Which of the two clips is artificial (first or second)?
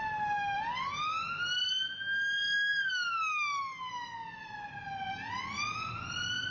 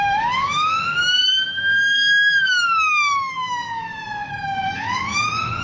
second